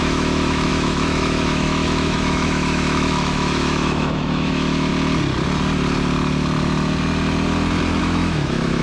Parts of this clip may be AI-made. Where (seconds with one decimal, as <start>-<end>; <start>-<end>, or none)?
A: 0.0-4.9; 8.0-8.8